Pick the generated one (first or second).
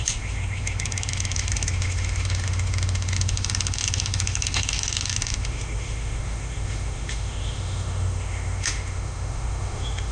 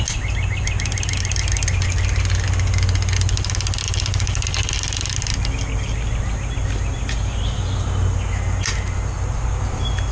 first